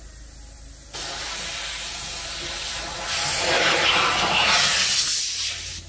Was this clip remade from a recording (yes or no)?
no